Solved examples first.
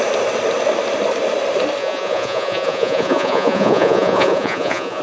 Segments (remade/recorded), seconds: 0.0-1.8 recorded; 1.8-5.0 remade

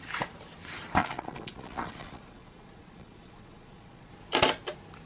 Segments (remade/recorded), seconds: 0.0-1.0 recorded; 1.0-4.1 remade; 4.1-5.1 recorded

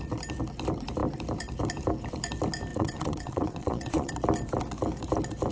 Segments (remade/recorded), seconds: 0.0-2.7 recorded; 2.7-4.1 remade; 4.1-5.5 recorded

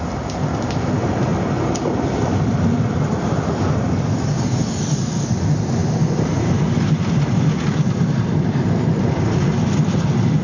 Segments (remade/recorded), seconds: 0.0-10.4 recorded